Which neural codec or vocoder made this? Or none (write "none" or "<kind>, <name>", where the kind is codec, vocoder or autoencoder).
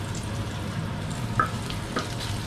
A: none